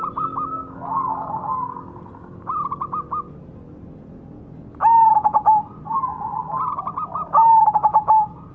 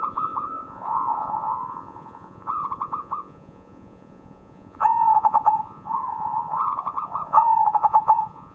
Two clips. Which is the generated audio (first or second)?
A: second